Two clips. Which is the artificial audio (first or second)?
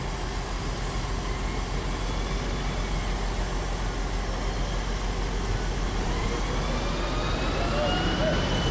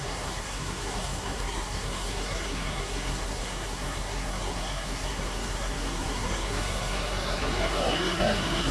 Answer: second